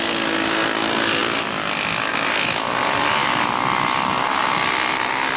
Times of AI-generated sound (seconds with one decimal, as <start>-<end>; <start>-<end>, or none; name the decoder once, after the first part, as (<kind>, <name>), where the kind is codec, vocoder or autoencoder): 1.2-2.1 (vocoder, BigVGAN v2)